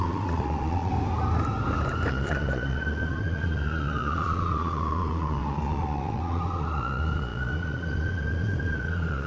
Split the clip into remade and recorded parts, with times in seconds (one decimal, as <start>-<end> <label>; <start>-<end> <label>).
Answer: 0.0-0.9 remade; 0.9-2.1 recorded; 2.1-9.3 remade